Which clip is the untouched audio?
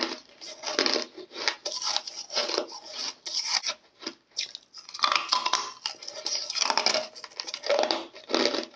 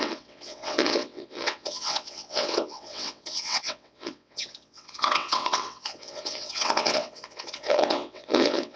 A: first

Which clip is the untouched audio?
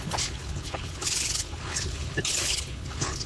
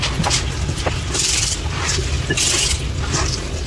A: second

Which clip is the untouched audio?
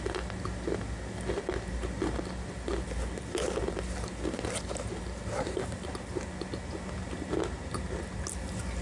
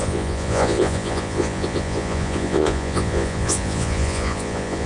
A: first